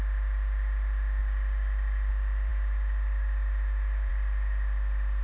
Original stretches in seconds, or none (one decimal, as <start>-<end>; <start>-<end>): 0.0-5.2